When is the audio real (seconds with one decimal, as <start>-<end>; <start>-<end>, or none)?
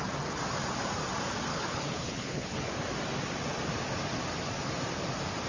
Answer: 0.0-1.5; 2.7-5.5